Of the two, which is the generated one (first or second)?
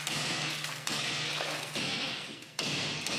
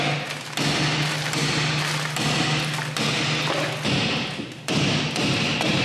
first